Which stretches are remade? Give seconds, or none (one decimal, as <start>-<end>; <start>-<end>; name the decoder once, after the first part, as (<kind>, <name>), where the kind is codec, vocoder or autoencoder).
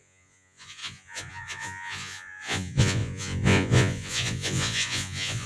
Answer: 0.0-5.5 (vocoder, Vocos)